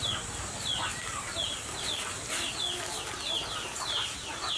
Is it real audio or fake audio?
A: real